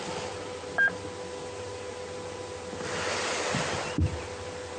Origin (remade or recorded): recorded